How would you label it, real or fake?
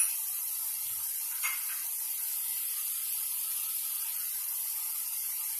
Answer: real